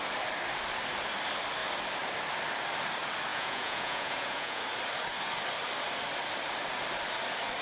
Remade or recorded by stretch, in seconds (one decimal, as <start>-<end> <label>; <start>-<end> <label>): 0.0-3.3 recorded; 3.3-4.6 remade; 4.6-7.6 recorded